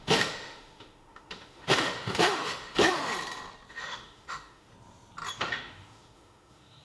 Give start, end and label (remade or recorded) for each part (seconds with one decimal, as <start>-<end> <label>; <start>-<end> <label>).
0.0-3.1 remade; 3.1-3.7 recorded; 3.7-4.7 remade; 4.7-5.3 recorded; 5.3-6.8 remade